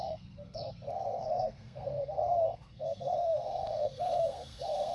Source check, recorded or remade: remade